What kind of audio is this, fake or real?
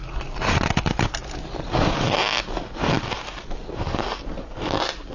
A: real